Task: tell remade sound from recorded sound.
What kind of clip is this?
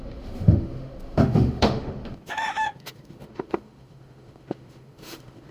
remade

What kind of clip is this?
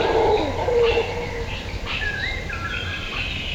recorded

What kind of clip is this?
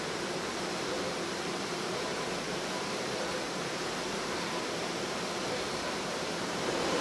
remade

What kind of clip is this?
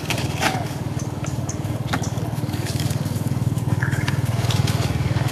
remade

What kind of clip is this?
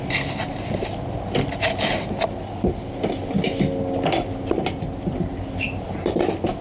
recorded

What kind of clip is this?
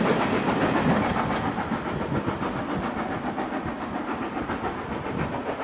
recorded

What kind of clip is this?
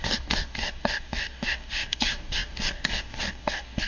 remade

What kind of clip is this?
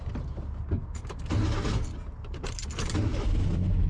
recorded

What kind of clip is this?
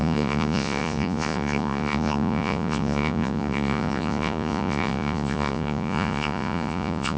remade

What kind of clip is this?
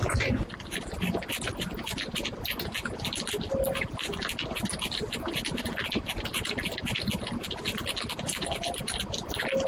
recorded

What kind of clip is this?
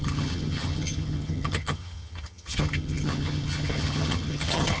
remade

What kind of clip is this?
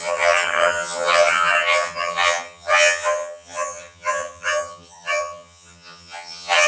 remade